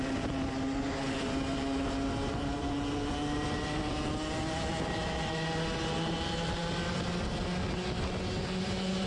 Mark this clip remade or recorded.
recorded